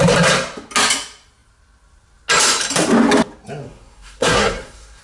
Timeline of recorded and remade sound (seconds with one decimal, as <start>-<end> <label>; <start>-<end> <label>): 0.0-3.6 recorded; 3.6-5.0 remade